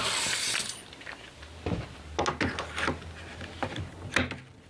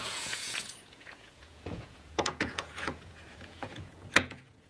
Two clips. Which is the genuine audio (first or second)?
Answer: first